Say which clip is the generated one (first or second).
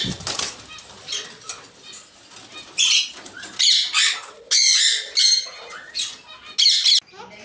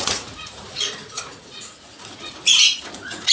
second